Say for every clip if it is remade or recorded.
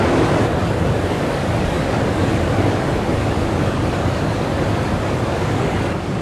remade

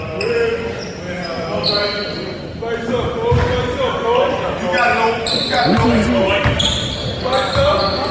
recorded